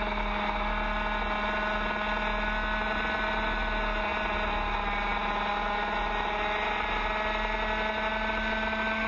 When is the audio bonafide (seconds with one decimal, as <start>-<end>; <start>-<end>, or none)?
0.0-9.1